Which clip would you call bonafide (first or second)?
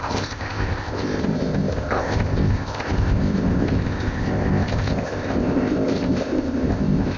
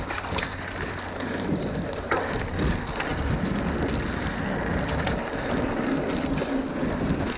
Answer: second